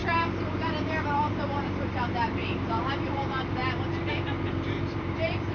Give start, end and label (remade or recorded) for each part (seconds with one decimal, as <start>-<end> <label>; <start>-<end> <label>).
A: 0.0-3.6 remade; 3.6-4.4 recorded; 4.4-5.5 remade

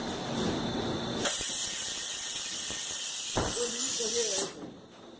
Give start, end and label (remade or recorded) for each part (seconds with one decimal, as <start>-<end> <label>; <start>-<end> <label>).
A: 0.0-1.2 recorded; 1.2-5.2 remade